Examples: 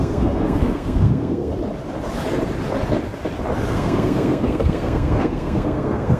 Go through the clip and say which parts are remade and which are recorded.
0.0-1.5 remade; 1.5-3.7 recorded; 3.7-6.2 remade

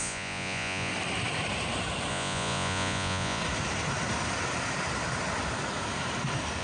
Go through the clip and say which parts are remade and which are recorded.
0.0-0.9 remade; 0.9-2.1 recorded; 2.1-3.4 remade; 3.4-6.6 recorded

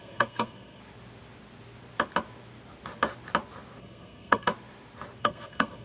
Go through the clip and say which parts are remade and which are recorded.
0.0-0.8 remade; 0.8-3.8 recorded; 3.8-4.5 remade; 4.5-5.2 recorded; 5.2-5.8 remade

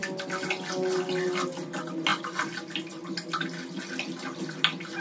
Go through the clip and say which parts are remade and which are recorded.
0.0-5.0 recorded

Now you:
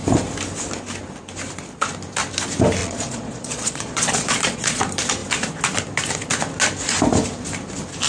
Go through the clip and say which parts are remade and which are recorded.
0.0-2.8 recorded; 2.8-4.8 remade; 4.8-8.1 recorded